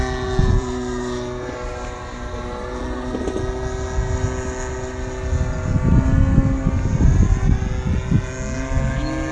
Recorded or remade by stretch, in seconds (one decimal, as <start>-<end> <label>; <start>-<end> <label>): 0.0-0.4 recorded; 0.4-2.8 remade; 2.8-9.3 recorded